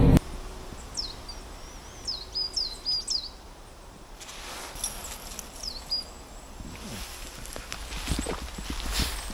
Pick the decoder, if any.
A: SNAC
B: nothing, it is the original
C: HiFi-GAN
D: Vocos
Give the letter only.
B